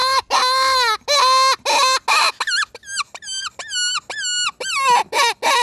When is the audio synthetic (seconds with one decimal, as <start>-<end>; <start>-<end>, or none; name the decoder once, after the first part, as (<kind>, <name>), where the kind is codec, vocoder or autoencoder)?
none